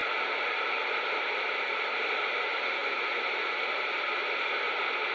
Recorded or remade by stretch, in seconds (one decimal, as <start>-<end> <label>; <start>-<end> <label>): 0.0-5.1 recorded